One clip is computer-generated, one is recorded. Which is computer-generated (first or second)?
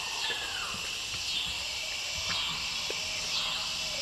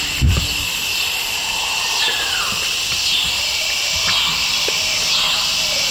second